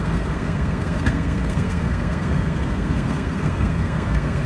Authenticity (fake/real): fake